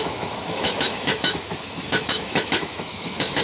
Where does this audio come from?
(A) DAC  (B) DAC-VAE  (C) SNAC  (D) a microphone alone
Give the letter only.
B